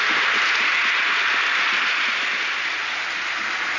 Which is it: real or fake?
real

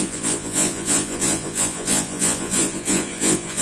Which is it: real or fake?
fake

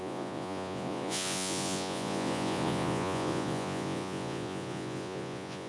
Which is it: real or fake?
fake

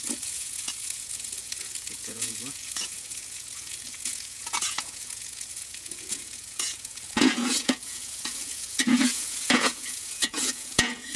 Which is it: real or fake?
fake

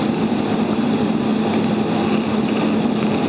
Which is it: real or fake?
real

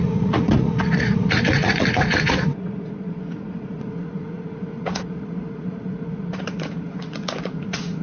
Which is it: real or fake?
fake